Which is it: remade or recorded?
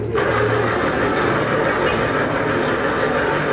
recorded